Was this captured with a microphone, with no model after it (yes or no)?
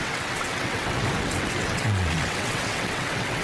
no